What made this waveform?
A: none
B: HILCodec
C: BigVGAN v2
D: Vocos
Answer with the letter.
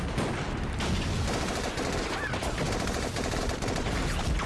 A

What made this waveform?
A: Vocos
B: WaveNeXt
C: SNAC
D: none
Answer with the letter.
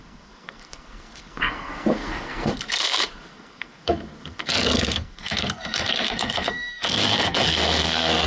C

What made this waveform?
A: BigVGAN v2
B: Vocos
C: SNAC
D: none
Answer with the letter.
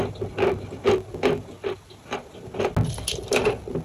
D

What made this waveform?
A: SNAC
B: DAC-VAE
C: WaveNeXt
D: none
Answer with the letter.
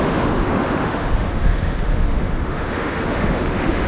B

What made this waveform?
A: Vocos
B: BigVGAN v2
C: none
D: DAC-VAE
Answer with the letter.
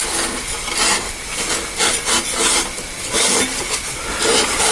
C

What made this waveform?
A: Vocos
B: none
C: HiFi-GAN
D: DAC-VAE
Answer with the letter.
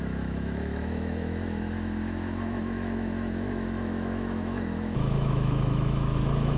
D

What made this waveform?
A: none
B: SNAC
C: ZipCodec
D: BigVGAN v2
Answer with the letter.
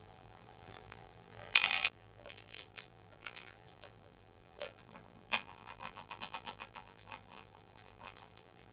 D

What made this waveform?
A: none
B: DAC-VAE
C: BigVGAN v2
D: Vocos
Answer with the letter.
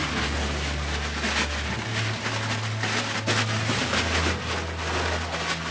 A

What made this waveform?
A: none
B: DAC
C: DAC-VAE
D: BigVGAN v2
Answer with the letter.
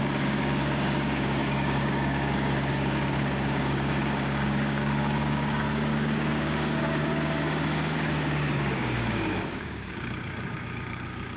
B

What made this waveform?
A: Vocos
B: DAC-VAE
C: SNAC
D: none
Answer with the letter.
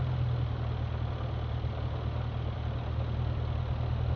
D